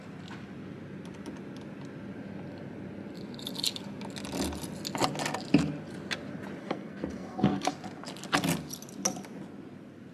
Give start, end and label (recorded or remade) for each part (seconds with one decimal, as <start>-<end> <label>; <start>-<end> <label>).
0.0-6.6 recorded; 6.6-7.7 remade; 7.7-10.1 recorded